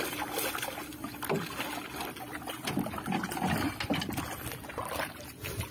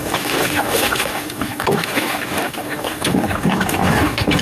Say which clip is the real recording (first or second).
first